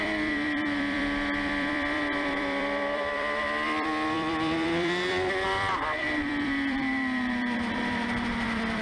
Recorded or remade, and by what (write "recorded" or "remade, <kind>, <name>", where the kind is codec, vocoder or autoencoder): remade, vocoder, BigVGAN v2